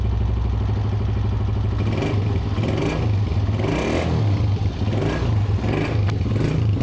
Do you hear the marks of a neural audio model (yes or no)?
no